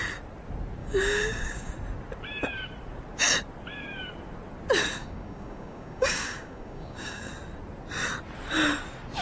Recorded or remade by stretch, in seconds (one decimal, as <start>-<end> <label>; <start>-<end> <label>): 0.0-0.8 recorded; 0.8-1.7 remade; 1.7-5.0 recorded; 5.0-7.3 remade; 7.3-9.2 recorded